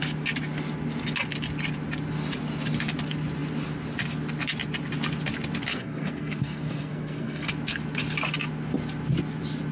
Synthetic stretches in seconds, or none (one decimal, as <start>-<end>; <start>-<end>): 5.7-7.5